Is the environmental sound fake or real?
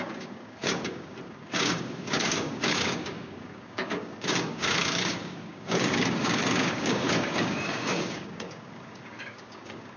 fake